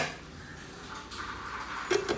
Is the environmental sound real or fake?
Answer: real